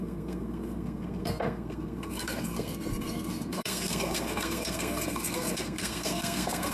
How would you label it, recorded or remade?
remade